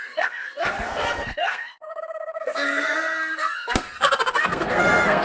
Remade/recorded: remade